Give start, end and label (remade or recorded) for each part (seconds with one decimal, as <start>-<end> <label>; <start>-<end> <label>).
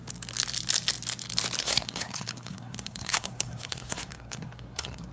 0.0-1.6 recorded; 1.6-5.1 remade